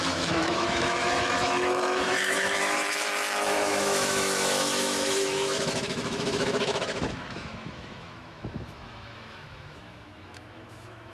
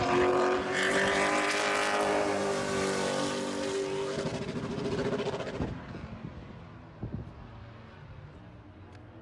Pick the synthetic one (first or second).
first